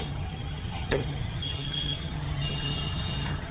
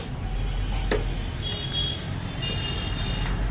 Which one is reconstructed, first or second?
first